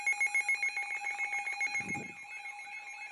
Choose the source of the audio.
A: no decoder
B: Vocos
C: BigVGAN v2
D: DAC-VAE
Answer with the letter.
A